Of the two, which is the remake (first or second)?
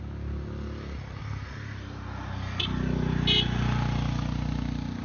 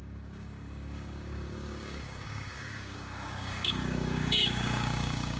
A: second